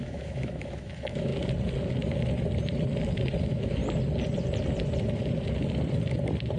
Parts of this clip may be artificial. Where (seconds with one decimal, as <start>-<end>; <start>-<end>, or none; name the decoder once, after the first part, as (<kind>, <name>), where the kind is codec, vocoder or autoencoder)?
0.0-1.3 (autoencoder, DAC-VAE); 3.4-3.8